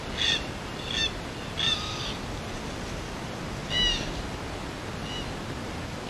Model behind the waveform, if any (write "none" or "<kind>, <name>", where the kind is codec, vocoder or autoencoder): none